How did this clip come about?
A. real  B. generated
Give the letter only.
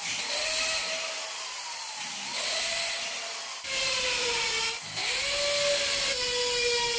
A